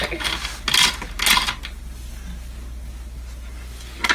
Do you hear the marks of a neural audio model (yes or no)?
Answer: no